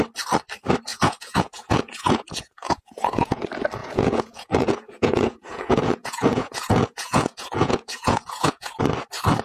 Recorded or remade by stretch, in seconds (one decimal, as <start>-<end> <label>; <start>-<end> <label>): 0.0-0.9 recorded; 0.9-3.4 remade; 3.4-3.8 recorded; 3.8-8.8 remade; 8.8-9.4 recorded